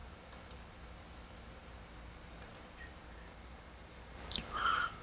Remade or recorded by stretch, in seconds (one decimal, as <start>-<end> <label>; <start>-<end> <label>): 0.0-0.8 remade; 0.8-1.6 recorded; 1.6-4.6 remade; 4.6-5.0 recorded